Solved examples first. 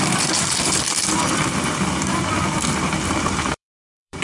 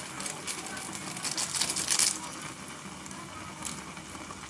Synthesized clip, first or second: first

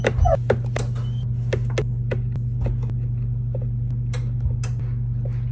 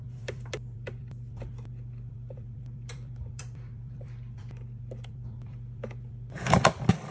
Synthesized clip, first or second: second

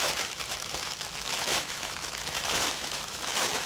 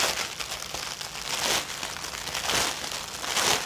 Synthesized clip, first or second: first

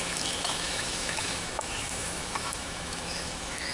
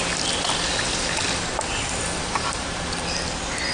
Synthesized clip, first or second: first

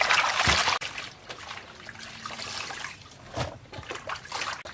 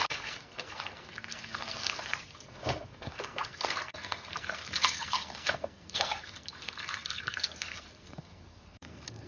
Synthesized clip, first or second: second